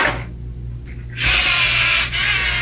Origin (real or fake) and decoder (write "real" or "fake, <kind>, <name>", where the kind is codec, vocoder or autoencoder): real